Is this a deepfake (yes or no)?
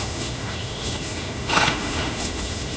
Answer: yes